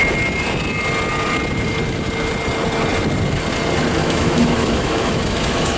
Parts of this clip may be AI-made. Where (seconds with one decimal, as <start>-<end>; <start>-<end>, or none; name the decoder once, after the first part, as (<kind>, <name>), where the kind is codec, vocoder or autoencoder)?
4.0-5.8 (autoencoder, DAC-VAE)